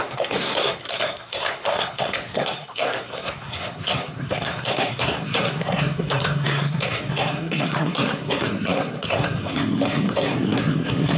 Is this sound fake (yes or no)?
yes